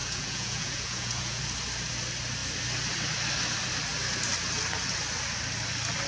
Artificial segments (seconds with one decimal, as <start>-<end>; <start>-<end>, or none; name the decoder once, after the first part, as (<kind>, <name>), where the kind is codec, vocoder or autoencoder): 0.0-1.4 (vocoder, Vocos)